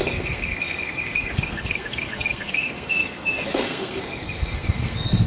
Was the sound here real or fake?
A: fake